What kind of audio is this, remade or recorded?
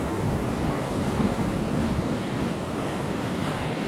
remade